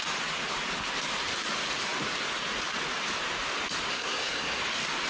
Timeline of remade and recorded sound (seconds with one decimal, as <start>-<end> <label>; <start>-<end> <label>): 0.0-3.9 recorded; 3.9-4.6 remade; 4.6-5.1 recorded

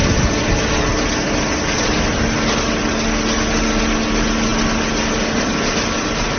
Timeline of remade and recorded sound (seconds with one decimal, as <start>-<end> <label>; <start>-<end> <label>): 0.0-6.4 recorded

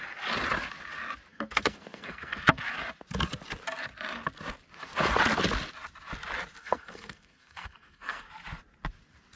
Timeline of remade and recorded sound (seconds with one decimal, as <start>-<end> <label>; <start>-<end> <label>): 0.0-1.3 recorded; 1.3-2.6 remade; 2.6-6.6 recorded; 6.6-8.3 remade; 8.3-9.4 recorded

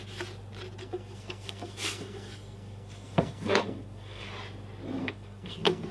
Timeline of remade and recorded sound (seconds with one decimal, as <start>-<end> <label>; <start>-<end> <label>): 0.0-0.8 recorded; 0.8-4.3 remade; 4.3-5.0 recorded; 5.0-5.9 remade